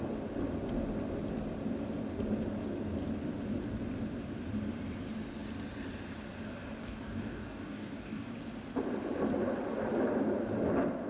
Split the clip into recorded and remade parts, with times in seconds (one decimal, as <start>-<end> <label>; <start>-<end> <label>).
0.0-6.8 recorded; 6.8-8.3 remade; 8.3-11.1 recorded